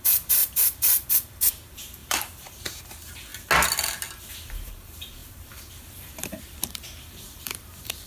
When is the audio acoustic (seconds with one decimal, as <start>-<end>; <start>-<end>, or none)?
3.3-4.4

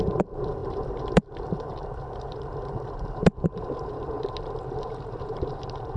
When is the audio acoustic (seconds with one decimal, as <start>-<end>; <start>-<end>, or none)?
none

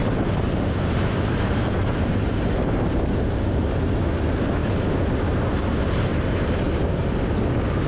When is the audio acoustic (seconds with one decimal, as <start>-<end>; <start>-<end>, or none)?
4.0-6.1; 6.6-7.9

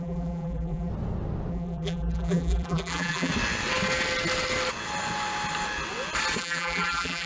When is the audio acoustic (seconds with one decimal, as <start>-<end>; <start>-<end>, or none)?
0.9-1.5; 3.3-6.4

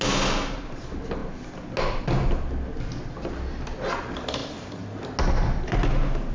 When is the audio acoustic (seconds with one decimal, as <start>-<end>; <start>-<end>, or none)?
0.0-6.3

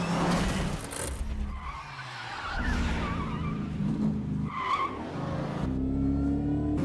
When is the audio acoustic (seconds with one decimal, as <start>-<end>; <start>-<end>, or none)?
0.0-2.2; 3.9-6.8

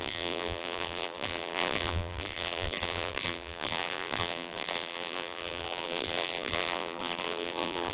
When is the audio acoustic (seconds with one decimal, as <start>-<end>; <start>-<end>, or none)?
none